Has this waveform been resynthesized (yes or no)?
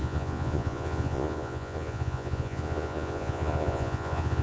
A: yes